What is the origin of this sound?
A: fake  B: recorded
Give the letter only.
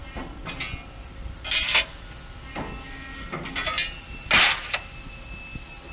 B